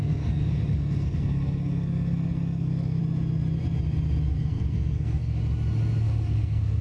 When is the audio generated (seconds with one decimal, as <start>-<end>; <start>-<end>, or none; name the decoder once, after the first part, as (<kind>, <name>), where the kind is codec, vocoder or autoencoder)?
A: 0.0-3.0 (codec, SNAC); 4.2-5.4; 6.0-6.8